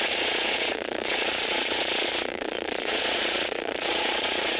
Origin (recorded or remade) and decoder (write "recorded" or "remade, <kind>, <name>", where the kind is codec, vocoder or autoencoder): remade, vocoder, Vocos